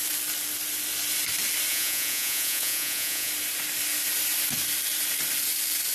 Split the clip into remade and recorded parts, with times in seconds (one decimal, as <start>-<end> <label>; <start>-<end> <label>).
0.0-1.7 recorded; 1.7-3.3 remade; 3.3-5.9 recorded